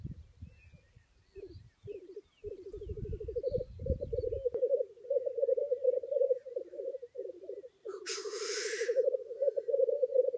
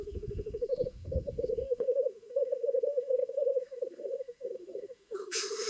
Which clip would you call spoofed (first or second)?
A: second